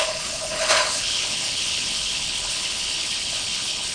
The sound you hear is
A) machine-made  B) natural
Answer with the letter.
A